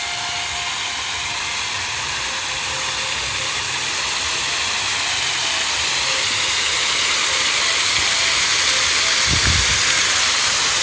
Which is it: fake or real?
real